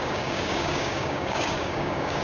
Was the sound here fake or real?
fake